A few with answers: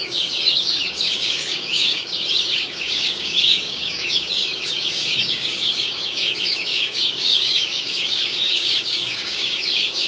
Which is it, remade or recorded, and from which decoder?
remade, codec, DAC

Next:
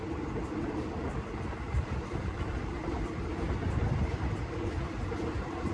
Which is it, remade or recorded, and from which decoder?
remade, vocoder, BigVGAN v2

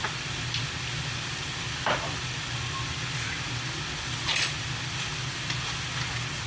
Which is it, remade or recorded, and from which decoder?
recorded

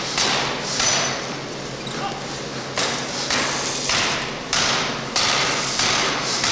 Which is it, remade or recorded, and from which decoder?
recorded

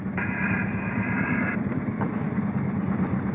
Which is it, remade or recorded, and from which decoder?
recorded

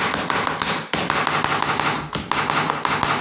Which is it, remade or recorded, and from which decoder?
recorded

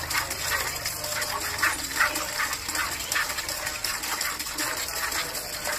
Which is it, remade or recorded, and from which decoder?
recorded